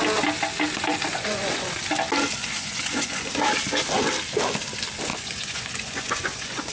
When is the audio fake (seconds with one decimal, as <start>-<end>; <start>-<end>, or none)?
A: 1.1-1.8; 2.4-3.3; 5.1-6.7